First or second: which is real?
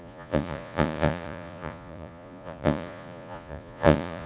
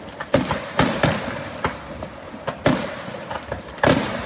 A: second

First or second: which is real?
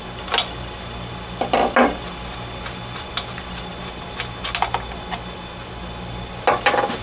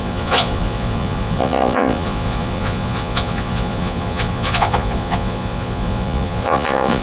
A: first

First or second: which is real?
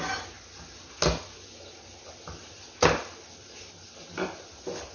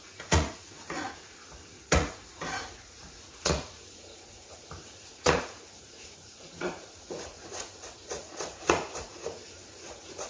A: first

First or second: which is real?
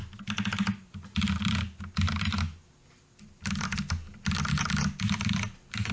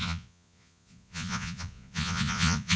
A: first